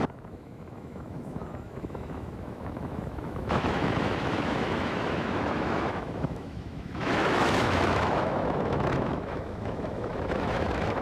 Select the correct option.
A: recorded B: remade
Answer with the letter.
B